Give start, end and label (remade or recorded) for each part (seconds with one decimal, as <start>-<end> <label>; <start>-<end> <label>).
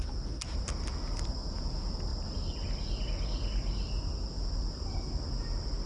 0.0-5.9 recorded